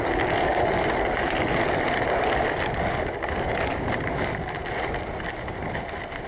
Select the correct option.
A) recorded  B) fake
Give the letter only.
A